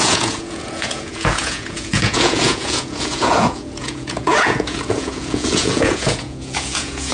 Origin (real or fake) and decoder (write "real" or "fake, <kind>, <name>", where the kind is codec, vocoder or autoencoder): fake, vocoder, Vocos